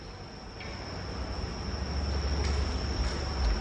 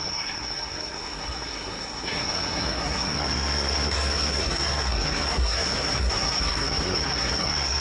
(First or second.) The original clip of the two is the first